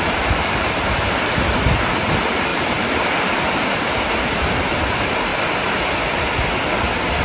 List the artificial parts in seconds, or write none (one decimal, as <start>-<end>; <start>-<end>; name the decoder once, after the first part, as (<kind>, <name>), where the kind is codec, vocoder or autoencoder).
0.0-5.3 (vocoder, BigVGAN v2)